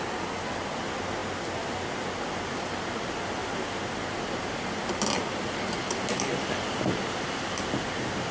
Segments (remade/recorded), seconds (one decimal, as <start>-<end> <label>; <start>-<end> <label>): 0.0-8.3 recorded